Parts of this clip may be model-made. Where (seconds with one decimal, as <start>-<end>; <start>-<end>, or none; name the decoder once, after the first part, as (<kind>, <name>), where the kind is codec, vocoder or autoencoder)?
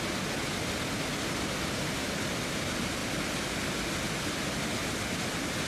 none